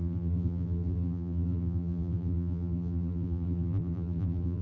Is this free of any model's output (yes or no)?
no